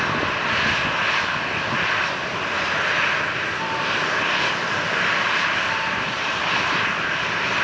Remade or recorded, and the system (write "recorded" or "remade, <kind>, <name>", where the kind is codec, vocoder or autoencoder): recorded